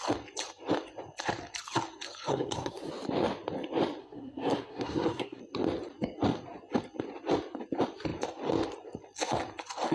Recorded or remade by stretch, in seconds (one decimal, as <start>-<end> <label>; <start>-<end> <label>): 0.0-2.3 recorded; 2.3-2.9 remade; 2.9-4.0 recorded; 4.0-5.4 remade; 5.4-9.9 recorded